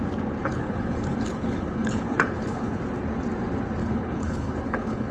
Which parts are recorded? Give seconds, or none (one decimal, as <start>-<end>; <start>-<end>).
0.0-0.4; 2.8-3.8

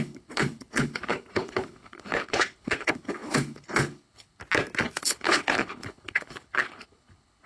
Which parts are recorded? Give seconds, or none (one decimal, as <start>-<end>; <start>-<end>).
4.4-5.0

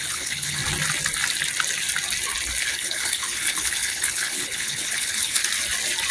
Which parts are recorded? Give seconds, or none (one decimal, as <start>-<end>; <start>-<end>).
0.6-2.6; 5.4-6.1

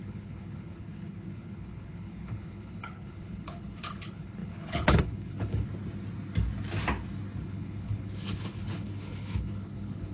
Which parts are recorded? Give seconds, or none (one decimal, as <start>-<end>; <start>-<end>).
5.7-7.4

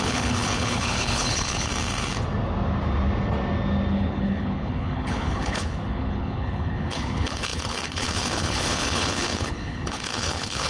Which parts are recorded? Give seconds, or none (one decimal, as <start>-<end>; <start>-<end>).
1.7-3.9

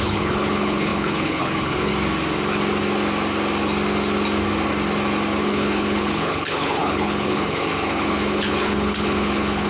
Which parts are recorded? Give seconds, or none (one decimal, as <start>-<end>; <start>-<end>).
1.9-5.4

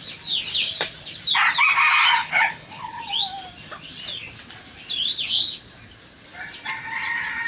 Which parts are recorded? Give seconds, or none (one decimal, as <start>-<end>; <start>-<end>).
0.0-2.2; 3.0-7.5

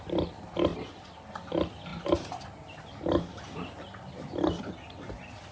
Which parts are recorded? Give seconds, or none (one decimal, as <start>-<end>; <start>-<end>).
0.0-5.5